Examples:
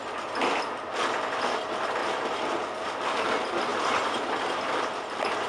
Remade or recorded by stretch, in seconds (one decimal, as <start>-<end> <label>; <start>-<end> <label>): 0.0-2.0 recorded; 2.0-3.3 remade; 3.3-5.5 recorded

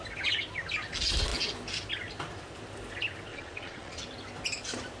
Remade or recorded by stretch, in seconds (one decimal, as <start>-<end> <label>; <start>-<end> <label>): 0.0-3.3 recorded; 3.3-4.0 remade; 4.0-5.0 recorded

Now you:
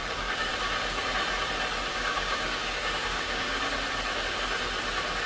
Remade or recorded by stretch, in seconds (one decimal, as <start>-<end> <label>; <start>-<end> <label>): 0.0-0.5 remade; 0.5-1.9 recorded; 1.9-3.6 remade; 3.6-5.3 recorded